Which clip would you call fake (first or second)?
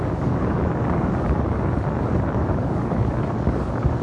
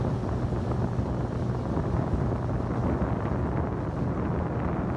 first